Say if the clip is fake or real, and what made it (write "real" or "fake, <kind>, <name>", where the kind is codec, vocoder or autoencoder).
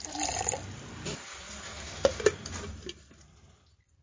real